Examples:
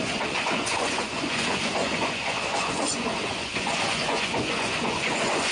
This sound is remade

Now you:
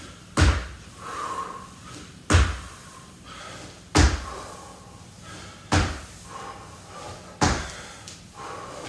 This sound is recorded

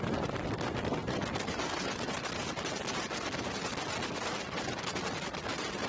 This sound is recorded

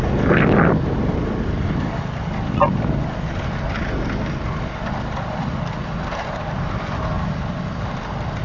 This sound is recorded